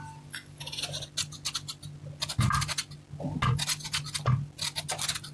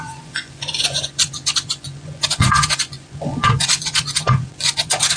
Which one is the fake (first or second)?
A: second